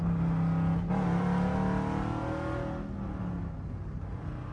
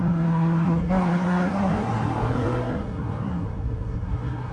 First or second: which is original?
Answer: first